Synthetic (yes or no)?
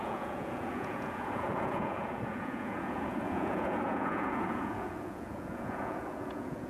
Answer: yes